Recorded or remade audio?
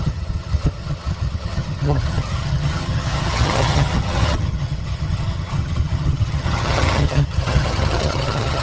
remade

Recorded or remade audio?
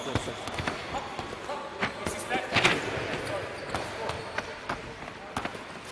recorded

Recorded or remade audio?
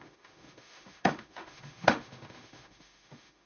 remade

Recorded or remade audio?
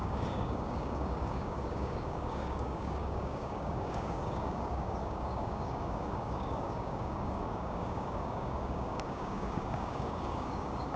remade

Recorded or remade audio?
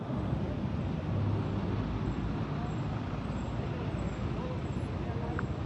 recorded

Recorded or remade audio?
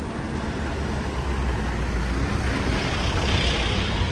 recorded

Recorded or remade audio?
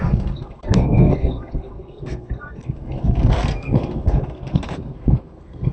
remade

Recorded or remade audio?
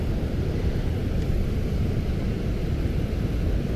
recorded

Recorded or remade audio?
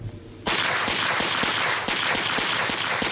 recorded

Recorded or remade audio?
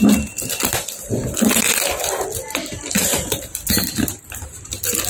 remade